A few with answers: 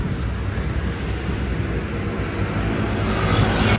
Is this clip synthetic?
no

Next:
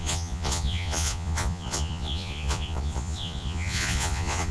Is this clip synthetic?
yes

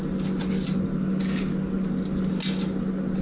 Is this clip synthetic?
no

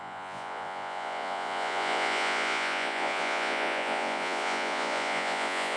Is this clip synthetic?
yes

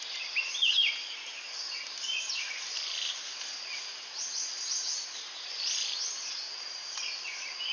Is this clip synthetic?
no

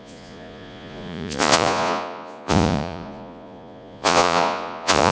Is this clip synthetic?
yes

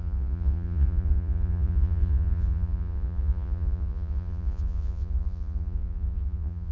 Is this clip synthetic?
yes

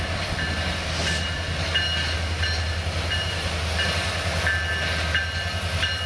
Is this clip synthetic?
no